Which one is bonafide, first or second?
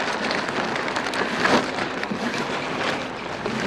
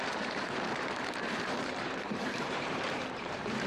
first